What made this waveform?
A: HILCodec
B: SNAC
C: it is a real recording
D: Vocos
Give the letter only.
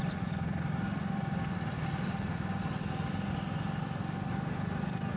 C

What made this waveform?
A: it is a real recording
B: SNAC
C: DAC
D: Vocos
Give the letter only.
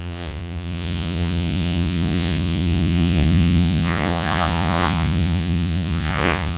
D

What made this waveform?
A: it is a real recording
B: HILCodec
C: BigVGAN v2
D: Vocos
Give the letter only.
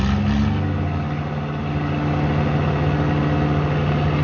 A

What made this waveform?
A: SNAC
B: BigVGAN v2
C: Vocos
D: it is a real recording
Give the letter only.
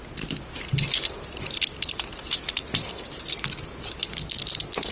D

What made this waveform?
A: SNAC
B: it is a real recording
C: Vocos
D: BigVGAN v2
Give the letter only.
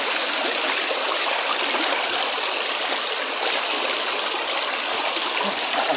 B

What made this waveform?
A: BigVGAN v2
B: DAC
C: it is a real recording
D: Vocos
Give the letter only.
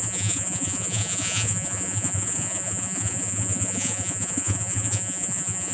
D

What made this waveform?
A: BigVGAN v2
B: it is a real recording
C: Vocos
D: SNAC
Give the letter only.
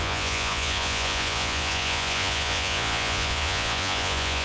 C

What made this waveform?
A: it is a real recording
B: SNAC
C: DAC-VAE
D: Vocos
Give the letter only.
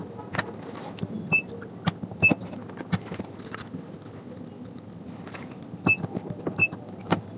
A